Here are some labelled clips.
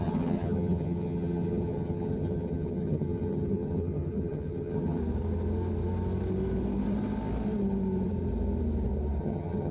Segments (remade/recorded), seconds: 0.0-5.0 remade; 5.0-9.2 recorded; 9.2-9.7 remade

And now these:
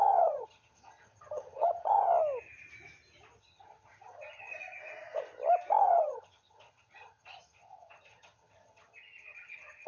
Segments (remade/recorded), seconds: 0.0-2.1 remade; 2.1-3.4 recorded; 3.4-4.5 remade; 4.5-5.8 recorded; 5.8-9.9 remade

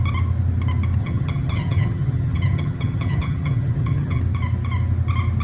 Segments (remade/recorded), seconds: 0.0-1.0 recorded; 1.0-4.2 remade; 4.2-5.4 recorded